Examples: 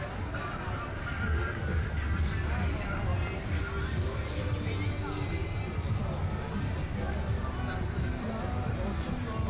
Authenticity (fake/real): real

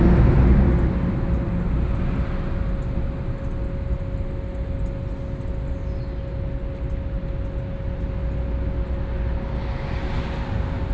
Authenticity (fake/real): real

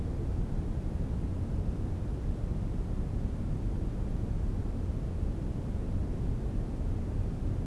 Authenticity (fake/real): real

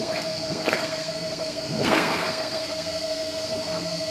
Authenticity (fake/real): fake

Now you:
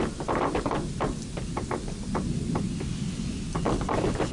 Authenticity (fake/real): real